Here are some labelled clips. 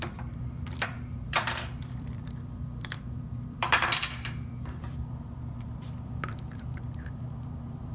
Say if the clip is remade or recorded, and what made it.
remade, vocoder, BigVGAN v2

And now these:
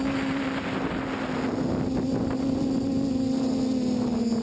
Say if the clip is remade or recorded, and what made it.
recorded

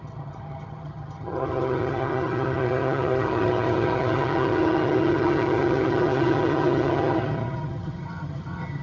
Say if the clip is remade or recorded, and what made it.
remade, vocoder, HiFi-GAN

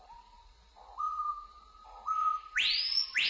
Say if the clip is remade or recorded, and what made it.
remade, vocoder, Vocos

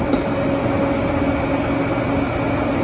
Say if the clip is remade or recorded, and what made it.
recorded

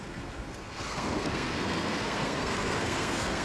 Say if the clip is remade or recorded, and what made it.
remade, codec, SNAC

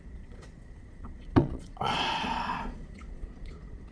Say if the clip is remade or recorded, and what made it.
remade, vocoder, Vocos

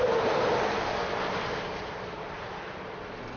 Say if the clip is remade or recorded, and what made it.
recorded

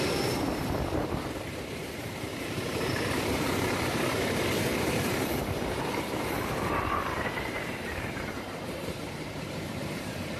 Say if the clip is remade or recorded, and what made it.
remade, vocoder, BigVGAN v2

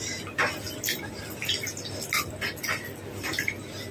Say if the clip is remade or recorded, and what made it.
recorded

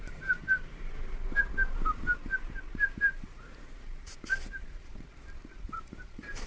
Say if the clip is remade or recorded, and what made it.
remade, vocoder, BigVGAN v2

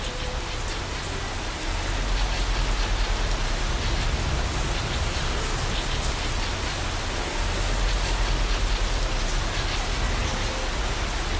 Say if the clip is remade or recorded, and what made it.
recorded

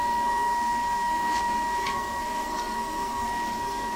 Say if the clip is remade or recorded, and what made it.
remade, codec, SNAC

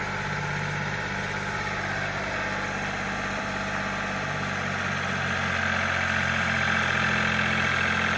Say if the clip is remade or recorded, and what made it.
recorded